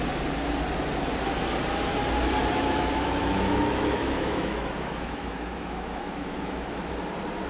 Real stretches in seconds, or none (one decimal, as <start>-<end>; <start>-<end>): 0.0-2.4; 6.9-7.5